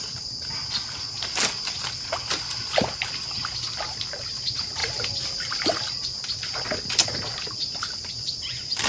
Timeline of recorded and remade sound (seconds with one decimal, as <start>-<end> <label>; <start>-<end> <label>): 0.0-8.9 recorded